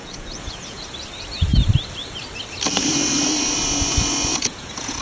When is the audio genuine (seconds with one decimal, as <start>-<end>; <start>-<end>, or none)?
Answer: 0.8-4.3